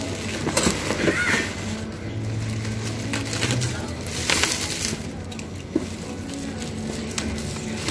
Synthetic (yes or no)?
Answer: no